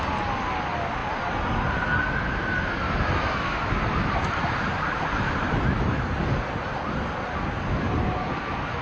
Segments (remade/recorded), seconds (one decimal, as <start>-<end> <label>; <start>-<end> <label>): 0.0-1.0 recorded; 1.0-1.7 remade; 1.7-8.8 recorded